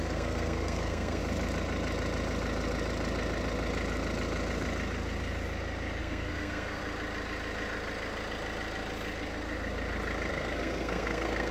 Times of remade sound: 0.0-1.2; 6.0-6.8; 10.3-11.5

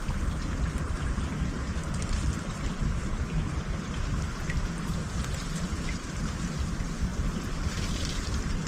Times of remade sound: none

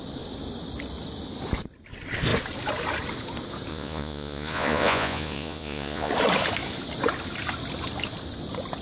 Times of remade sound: 3.7-6.1

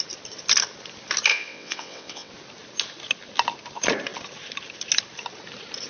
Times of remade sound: 1.3-2.3

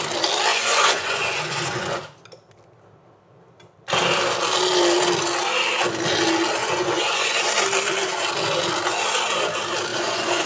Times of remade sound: 0.5-2.0; 6.6-7.5; 9.9-10.5

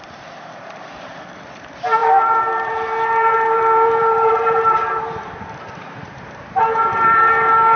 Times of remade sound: 0.0-7.8

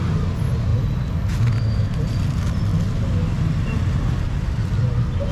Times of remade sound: none

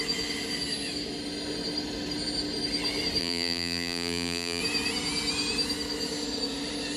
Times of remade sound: 3.2-4.6